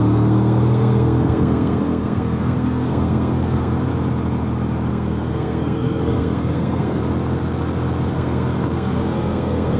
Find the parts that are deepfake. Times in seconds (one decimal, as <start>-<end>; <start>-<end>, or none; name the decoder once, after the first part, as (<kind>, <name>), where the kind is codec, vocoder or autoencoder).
0.0-3.9 (codec, SNAC); 4.9-7.0; 8.1-9.8